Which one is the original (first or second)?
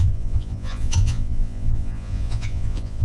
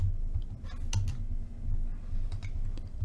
second